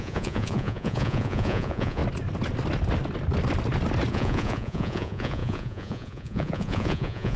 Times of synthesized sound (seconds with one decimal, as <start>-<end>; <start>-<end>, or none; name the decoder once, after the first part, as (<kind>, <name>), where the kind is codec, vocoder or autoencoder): 0.0-2.0 (vocoder, Vocos); 4.1-7.4